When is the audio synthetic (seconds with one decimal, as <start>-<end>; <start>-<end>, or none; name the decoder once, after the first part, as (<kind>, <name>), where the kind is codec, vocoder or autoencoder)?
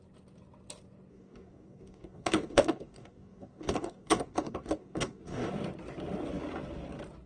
1.1-5.5 (codec, DAC)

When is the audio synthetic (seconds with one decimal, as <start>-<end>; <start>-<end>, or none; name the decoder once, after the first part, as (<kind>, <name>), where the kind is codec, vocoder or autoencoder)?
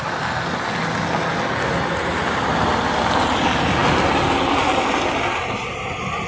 none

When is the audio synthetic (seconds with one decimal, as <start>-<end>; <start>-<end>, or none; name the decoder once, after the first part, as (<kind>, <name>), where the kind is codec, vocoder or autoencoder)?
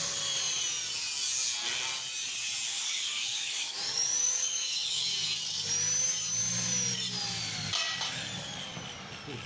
2.7-5.1 (codec, DAC)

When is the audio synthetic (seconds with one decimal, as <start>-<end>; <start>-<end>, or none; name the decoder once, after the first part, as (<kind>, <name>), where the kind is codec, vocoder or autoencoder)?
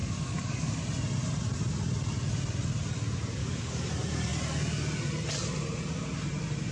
0.0-0.8 (codec, DAC); 3.4-3.9